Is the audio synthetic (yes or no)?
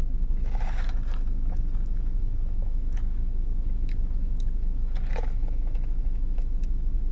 yes